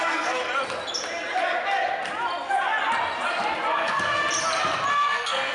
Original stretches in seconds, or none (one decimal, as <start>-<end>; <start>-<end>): 0.4-3.7; 4.2-4.9